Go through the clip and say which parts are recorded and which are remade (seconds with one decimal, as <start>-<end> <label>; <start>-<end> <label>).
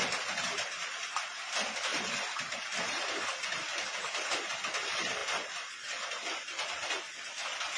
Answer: 0.0-1.9 recorded; 1.9-2.4 remade; 2.4-3.7 recorded; 3.7-4.5 remade; 4.5-5.2 recorded; 5.2-7.8 remade